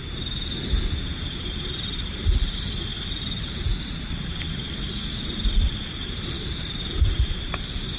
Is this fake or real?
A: fake